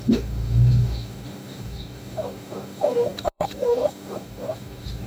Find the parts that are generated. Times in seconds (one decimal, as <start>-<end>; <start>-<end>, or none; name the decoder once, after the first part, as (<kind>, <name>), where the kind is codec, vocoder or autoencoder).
0.0-5.1 (codec, DAC)